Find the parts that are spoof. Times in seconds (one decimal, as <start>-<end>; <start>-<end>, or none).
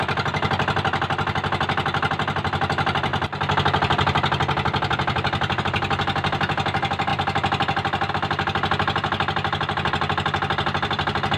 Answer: none